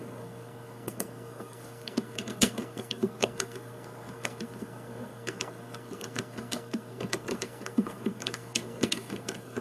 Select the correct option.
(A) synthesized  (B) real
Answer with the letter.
A